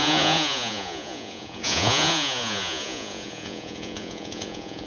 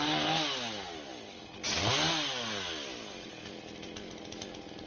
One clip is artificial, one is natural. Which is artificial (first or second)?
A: first